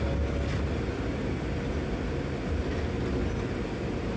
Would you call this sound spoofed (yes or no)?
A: no